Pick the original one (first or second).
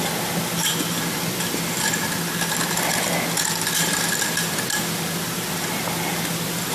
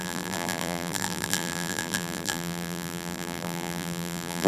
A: first